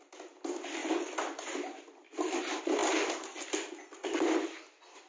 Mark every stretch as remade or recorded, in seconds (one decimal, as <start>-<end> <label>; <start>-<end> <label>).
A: 0.0-5.1 recorded